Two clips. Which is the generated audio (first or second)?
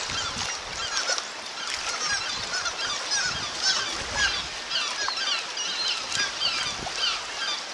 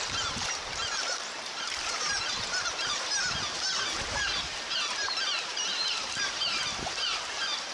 second